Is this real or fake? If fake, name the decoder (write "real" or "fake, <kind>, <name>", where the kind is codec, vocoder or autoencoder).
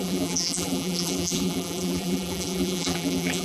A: fake, vocoder, BigVGAN v2